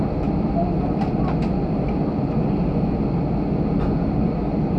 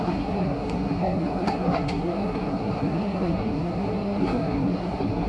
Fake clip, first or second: second